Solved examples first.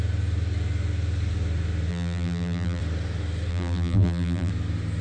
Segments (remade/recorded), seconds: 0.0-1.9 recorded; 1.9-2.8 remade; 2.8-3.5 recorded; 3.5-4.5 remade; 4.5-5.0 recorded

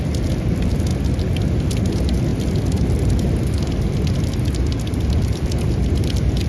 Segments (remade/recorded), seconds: 0.0-0.9 remade; 0.9-1.7 recorded; 1.7-2.3 remade; 2.3-4.4 recorded; 4.4-6.5 remade

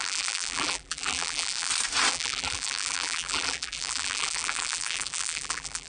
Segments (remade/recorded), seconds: 0.0-1.7 remade; 1.7-2.1 recorded; 2.1-5.9 remade

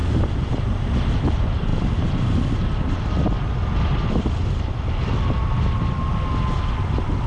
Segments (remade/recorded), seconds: 0.0-0.5 remade; 0.5-7.3 recorded